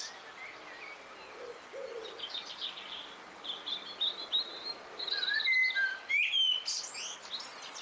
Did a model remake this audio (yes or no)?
no